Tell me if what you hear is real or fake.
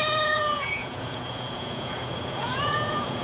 fake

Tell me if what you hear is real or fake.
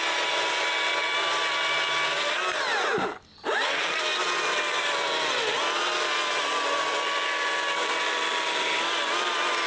real